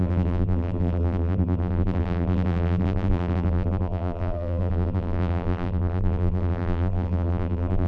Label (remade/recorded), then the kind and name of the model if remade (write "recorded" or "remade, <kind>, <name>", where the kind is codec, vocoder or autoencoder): remade, vocoder, BigVGAN v2